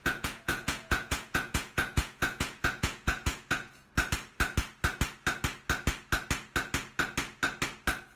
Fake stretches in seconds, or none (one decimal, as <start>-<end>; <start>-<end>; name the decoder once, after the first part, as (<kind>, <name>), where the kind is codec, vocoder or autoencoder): 0.0-3.8 (vocoder, Vocos)